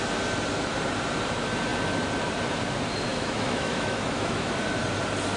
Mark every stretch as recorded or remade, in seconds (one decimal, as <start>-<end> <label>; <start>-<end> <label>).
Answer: 0.0-3.1 recorded; 3.1-4.5 remade; 4.5-5.4 recorded